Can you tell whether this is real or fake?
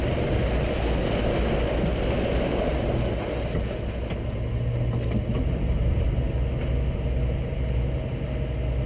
real